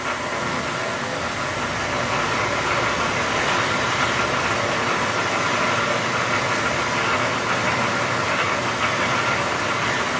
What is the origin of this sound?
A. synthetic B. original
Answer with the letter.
B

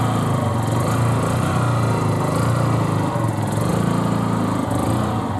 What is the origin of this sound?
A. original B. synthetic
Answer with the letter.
A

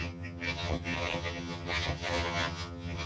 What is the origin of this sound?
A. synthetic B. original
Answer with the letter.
A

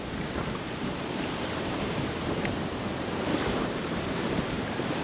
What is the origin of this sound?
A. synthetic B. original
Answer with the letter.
A